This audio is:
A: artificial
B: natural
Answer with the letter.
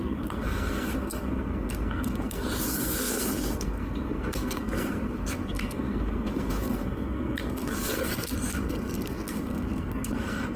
A